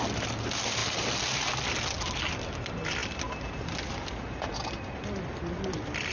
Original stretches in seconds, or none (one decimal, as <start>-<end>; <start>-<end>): 0.0-6.1